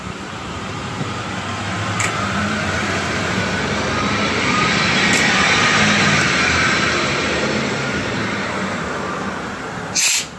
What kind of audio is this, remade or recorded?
remade